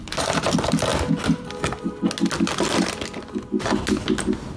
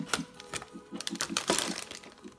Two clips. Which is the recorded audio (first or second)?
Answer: first